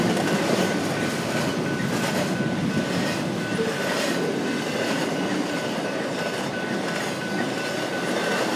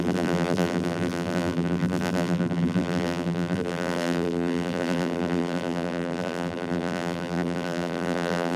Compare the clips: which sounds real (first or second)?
first